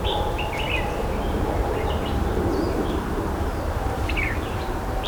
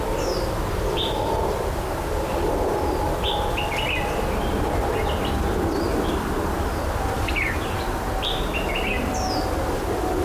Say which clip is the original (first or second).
second